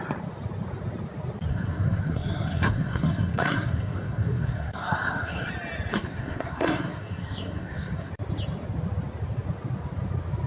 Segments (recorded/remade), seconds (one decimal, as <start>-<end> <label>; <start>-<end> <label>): 0.0-1.5 recorded; 1.5-5.5 remade; 5.5-5.9 recorded; 5.9-8.1 remade; 8.1-10.5 recorded